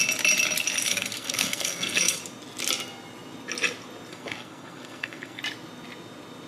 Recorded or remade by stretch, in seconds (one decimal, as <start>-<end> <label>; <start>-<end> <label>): 0.0-0.9 recorded; 0.9-2.2 remade; 2.2-4.1 recorded; 4.1-5.4 remade; 5.4-6.5 recorded